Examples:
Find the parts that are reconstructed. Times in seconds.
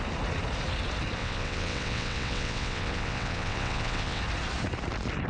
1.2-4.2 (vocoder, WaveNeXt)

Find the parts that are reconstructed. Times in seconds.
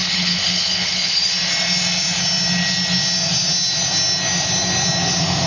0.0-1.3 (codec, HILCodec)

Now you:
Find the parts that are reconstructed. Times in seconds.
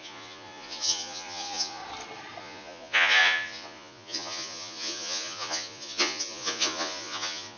0.0-1.8 (vocoder, Vocos); 2.4-7.6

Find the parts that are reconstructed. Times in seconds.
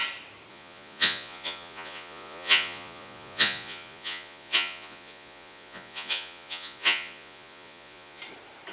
0.5-8.2 (vocoder, Vocos)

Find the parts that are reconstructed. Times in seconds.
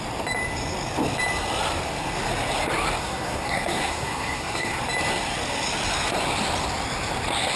3.0-4.8 (codec, SNAC)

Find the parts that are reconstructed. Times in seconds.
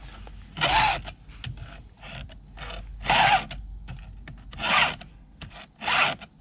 5.1-5.6 (codec, SNAC)